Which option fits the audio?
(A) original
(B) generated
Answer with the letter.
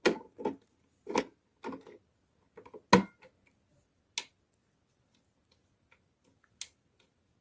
A